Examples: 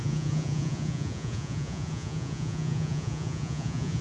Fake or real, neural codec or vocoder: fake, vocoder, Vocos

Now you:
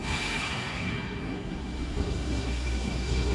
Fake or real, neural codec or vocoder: fake, codec, SNAC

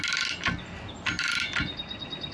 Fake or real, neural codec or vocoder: real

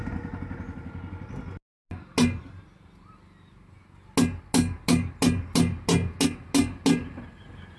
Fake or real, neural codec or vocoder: real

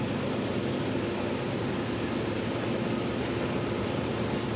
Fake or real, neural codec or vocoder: real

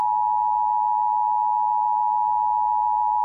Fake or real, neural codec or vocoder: real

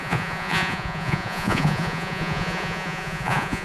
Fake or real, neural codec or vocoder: fake, vocoder, Vocos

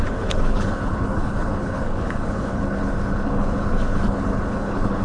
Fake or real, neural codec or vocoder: fake, codec, HILCodec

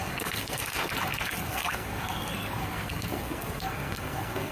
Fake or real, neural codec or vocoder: fake, codec, SNAC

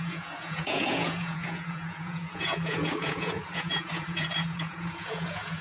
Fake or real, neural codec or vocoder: fake, vocoder, Vocos